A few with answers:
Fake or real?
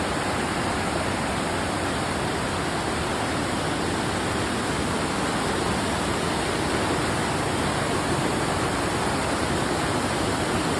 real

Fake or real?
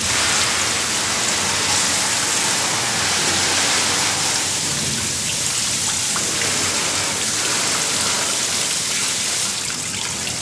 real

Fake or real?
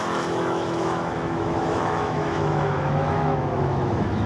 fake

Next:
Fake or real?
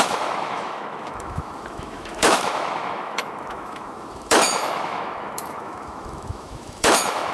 fake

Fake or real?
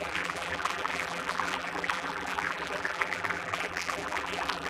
fake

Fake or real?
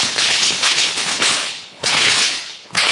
fake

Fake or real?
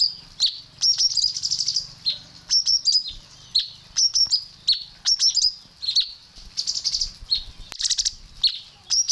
real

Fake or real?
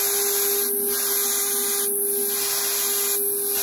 real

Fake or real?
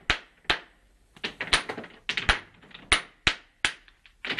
real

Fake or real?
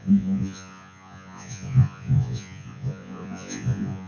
fake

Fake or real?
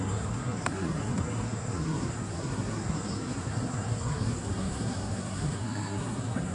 fake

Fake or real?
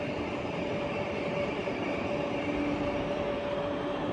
real